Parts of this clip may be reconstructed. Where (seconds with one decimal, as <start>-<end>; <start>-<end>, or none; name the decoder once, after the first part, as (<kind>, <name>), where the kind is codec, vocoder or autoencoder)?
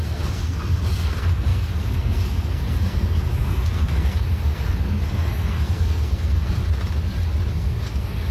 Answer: 0.0-6.6 (codec, SNAC); 7.5-8.3